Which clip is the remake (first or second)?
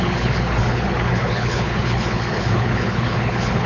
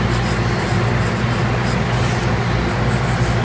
first